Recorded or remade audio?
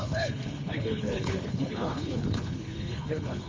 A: remade